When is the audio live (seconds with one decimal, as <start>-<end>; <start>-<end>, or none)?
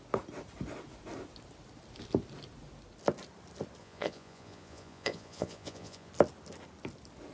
0.0-3.8; 6.1-7.3